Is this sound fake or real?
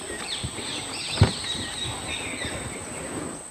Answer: real